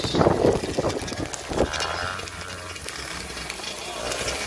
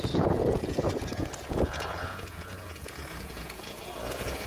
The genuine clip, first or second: first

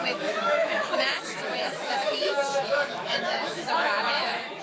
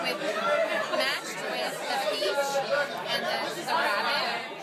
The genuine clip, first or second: second